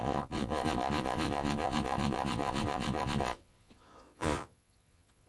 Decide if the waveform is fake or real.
fake